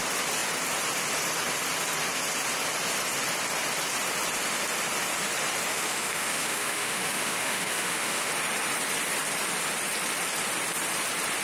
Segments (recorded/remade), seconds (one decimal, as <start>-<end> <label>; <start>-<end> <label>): 0.0-5.7 recorded; 5.7-8.3 remade; 8.3-11.4 recorded